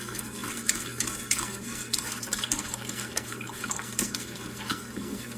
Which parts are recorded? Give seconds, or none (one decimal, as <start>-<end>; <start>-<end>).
none